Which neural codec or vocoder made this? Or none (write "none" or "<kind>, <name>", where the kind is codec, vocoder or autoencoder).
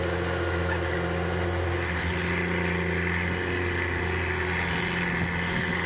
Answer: none